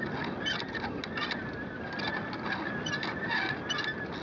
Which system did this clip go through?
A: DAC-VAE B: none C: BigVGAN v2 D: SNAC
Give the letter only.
B